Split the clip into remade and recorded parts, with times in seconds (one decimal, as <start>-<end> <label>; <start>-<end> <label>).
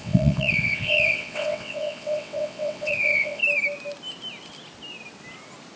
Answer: 0.0-3.4 remade; 3.4-5.8 recorded